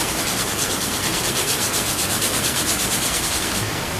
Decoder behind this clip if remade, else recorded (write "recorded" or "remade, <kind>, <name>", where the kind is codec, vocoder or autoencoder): remade, codec, SNAC